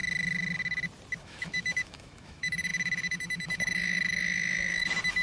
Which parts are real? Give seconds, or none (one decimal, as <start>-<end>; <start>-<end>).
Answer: 0.0-1.2